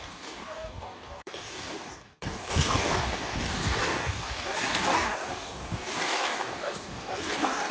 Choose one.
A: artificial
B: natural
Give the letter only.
A